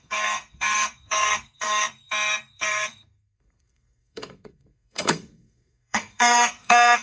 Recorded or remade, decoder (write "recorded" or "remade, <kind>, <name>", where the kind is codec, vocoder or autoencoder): remade, codec, SNAC